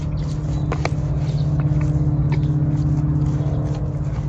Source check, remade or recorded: recorded